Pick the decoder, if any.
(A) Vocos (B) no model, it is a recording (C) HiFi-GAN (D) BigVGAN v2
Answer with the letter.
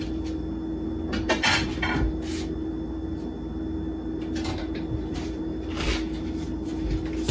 B